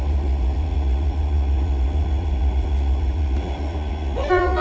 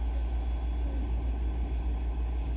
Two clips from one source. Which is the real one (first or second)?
second